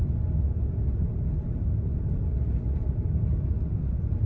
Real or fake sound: real